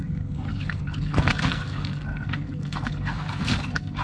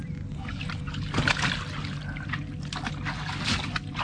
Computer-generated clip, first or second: first